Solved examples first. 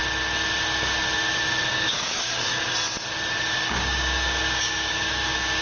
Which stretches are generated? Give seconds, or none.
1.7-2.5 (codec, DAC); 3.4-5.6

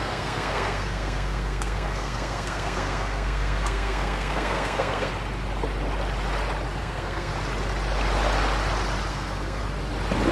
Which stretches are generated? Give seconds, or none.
0.0-5.1 (codec, SNAC); 6.8-7.3; 9.1-9.6

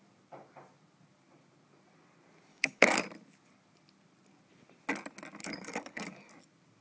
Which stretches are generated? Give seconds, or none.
2.5-3.0 (codec, DAC); 5.4-6.3

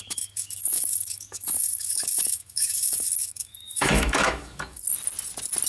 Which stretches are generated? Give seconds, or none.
0.0-4.8 (autoencoder, DAC-VAE)

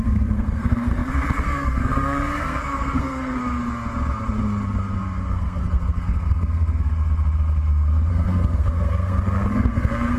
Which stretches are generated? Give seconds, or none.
0.0-3.4 (codec, SNAC); 5.0-6.9; 8.1-10.2